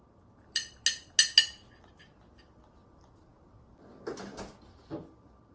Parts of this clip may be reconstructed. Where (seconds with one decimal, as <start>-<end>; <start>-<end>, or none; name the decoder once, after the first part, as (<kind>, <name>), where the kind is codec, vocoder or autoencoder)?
none